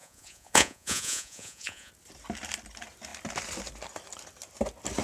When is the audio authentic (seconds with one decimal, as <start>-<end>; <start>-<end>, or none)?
1.9-5.0